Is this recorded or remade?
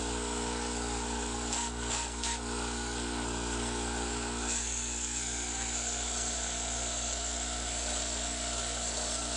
remade